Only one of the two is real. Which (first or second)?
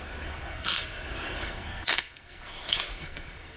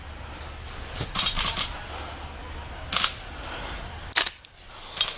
second